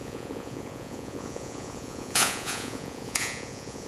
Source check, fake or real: fake